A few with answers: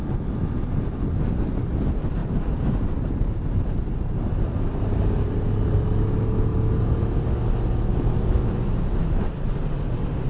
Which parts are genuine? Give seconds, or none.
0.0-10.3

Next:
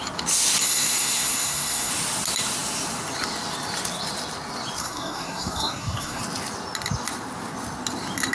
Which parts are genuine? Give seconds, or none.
0.0-0.6; 1.9-4.8; 6.2-8.3

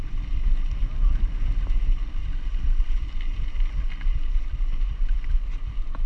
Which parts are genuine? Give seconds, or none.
0.0-6.1